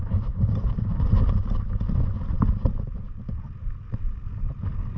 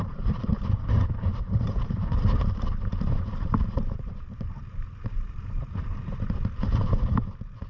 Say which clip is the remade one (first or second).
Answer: second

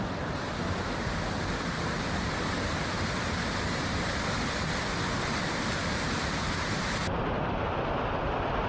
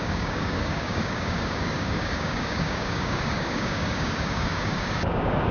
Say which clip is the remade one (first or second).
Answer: second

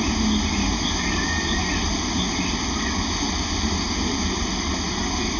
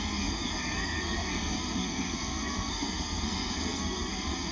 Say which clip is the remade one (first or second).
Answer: second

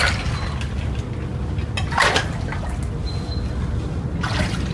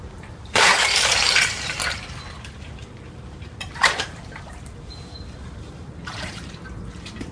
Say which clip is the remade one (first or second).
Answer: second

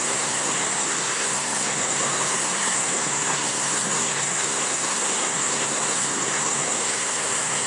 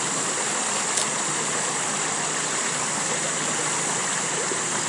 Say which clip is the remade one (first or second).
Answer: first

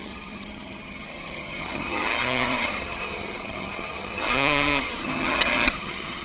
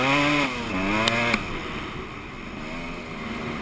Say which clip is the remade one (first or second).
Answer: first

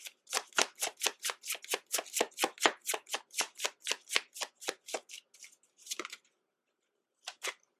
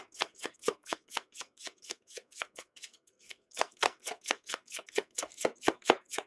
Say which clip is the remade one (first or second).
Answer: second